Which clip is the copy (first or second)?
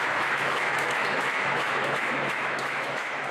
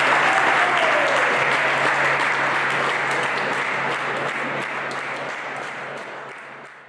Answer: first